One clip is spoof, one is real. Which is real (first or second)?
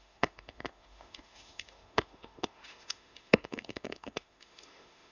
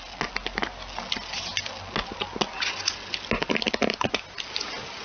second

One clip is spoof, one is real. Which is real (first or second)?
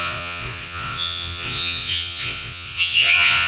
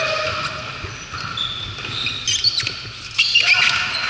second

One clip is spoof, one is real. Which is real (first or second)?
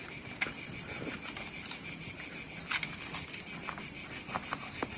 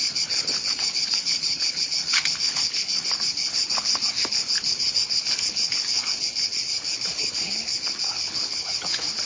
first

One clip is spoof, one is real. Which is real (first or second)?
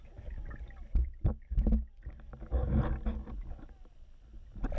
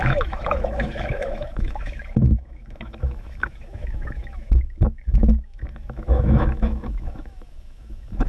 first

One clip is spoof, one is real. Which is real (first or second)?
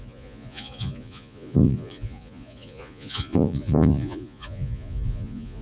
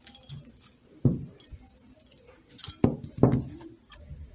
second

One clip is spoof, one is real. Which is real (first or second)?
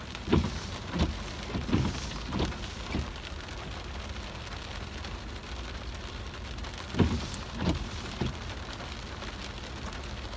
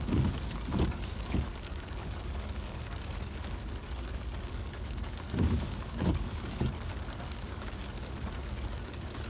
first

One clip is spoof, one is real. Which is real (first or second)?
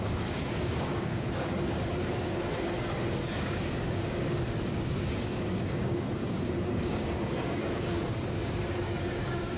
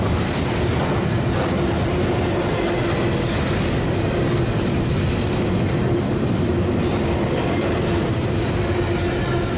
second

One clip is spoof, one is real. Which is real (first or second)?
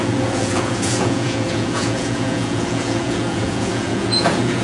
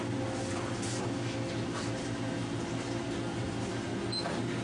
second